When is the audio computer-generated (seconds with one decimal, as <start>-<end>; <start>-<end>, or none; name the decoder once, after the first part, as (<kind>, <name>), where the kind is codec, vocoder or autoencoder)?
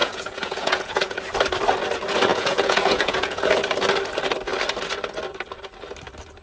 0.0-1.2 (vocoder, Vocos); 2.3-3.4